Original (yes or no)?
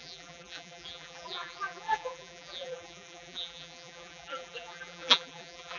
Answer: no